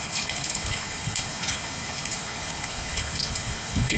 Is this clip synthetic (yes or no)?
yes